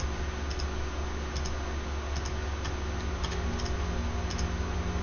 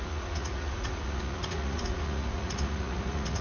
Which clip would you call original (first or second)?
first